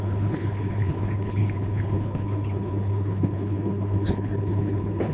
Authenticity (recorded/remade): remade